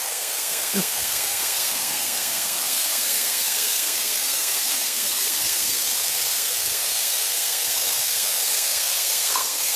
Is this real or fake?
fake